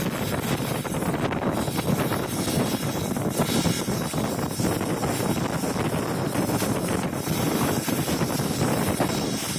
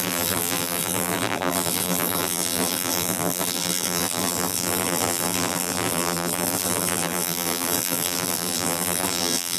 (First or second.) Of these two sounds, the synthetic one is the second